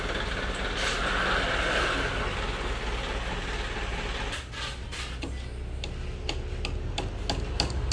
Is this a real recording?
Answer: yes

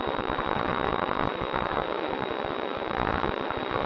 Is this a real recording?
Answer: no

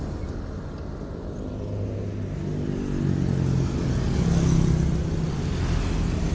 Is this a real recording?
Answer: yes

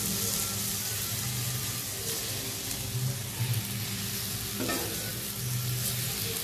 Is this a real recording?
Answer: yes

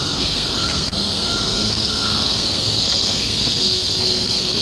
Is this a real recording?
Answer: no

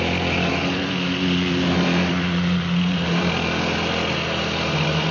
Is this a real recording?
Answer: yes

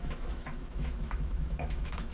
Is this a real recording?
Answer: no